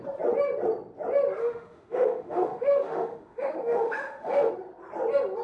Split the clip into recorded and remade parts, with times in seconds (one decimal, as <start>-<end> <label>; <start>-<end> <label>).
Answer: 0.0-1.4 recorded; 1.4-4.5 remade; 4.5-5.4 recorded